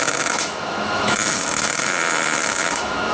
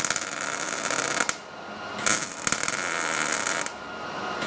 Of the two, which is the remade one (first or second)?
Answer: first